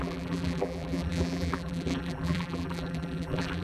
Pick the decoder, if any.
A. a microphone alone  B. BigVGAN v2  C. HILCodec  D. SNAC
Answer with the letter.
B